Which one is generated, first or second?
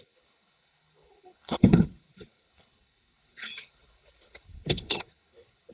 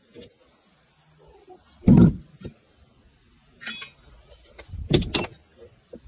first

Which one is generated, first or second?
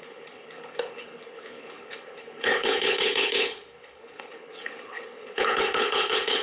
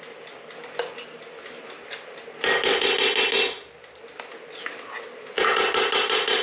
first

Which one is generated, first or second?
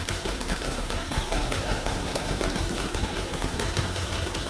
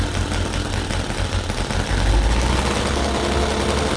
first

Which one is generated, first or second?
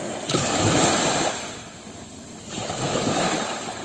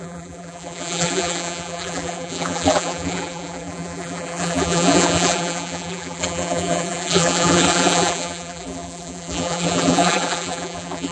second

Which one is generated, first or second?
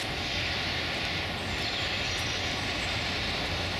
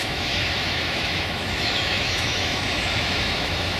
second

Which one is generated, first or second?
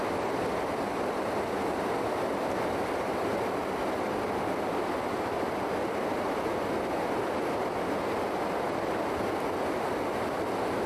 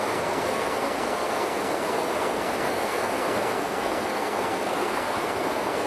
second